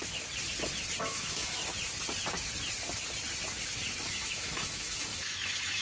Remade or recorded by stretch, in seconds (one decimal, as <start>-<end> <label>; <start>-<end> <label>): 0.0-1.0 recorded; 1.0-1.6 remade; 1.6-4.1 recorded; 4.1-5.8 remade